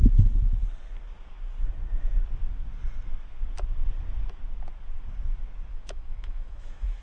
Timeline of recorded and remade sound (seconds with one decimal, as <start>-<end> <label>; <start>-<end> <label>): 0.0-5.7 recorded; 5.7-7.0 remade